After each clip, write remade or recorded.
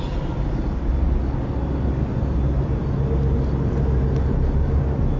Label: recorded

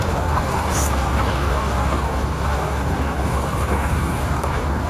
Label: remade